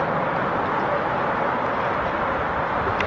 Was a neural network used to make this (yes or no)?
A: no